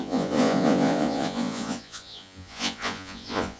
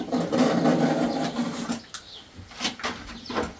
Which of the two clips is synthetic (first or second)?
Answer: first